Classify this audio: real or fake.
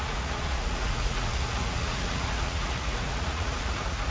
fake